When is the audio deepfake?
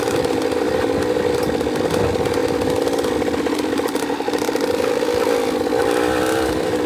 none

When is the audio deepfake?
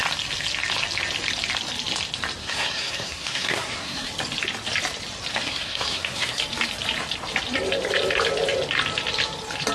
2.4-4.1 (codec, SNAC); 5.3-6.4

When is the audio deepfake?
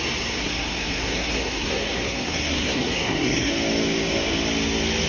0.4-3.5 (codec, SNAC)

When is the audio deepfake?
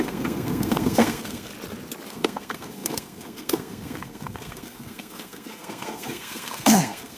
0.0-1.5 (codec, SNAC); 2.1-7.2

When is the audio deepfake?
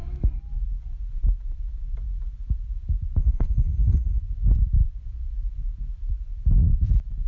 3.2-4.2 (codec, SNAC)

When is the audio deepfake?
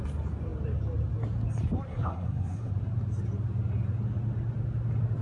1.9-2.7 (codec, SNAC)